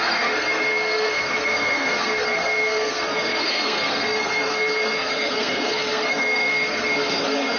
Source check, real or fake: fake